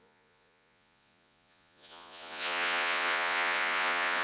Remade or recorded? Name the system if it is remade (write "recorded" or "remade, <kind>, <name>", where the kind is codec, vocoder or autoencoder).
remade, vocoder, Vocos